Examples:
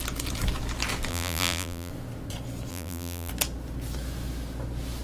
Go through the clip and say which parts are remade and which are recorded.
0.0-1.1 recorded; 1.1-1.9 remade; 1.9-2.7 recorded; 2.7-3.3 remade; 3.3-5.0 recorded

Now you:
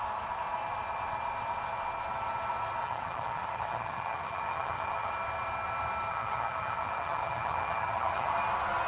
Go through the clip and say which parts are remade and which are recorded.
0.0-2.8 recorded; 2.8-5.1 remade; 5.1-6.1 recorded; 6.1-8.3 remade; 8.3-8.9 recorded

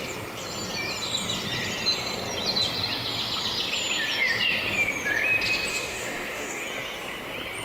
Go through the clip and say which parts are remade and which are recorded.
0.0-5.7 recorded; 5.7-6.6 remade; 6.6-7.6 recorded

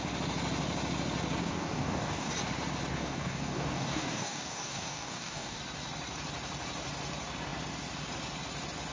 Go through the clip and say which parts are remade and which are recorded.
0.0-1.4 recorded; 1.4-2.3 remade; 2.3-2.9 recorded; 2.9-5.6 remade; 5.6-8.9 recorded